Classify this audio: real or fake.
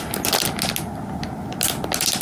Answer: real